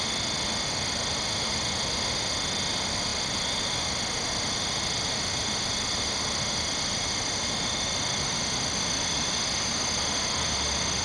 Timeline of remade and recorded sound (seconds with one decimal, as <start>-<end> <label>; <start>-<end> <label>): 0.0-11.0 recorded